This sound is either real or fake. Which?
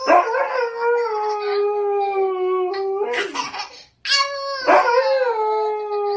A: real